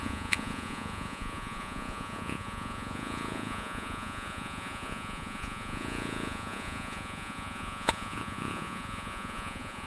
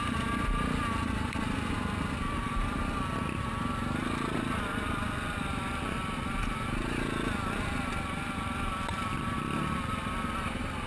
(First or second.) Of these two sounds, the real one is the second